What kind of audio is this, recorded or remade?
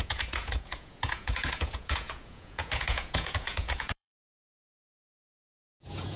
remade